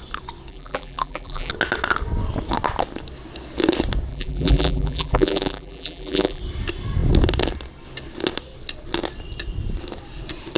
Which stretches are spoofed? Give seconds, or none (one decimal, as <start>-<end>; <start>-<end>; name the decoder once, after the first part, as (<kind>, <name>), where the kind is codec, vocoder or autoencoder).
0.5-1.5 (vocoder, BigVGAN v2); 4.1-6.4